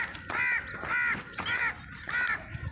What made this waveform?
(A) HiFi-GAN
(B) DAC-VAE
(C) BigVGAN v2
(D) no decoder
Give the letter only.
D